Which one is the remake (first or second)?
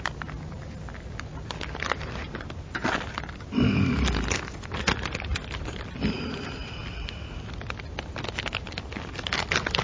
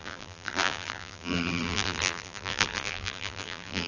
second